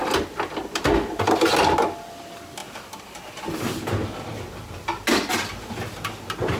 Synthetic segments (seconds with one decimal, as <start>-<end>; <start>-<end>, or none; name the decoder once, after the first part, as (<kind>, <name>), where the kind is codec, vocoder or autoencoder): none